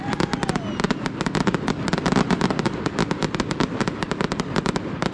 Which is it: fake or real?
real